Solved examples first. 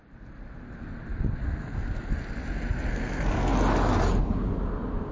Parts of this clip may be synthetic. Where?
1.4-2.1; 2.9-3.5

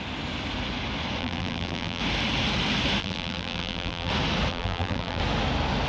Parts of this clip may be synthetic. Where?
1.2-2.0; 3.0-4.1; 4.5-5.2